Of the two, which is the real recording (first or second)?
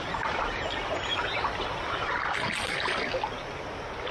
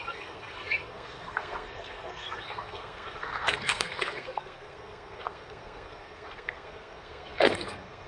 first